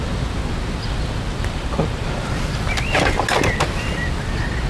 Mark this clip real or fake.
real